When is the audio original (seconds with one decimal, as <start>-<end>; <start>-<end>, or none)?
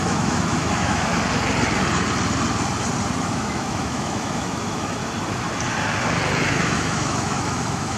1.1-3.2; 5.0-6.5